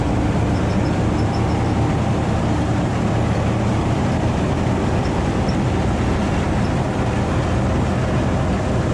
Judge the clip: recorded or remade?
remade